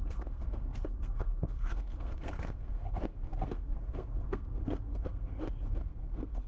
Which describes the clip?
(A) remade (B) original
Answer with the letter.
A